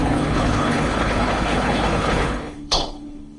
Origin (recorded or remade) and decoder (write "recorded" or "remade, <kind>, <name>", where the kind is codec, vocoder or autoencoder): remade, codec, HILCodec